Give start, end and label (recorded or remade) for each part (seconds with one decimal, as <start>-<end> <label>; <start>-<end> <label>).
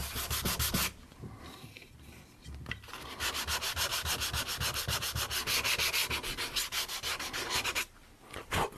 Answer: 0.0-8.8 recorded